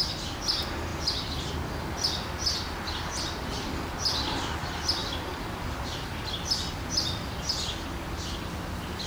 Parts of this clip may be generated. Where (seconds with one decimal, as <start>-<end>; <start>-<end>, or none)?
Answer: none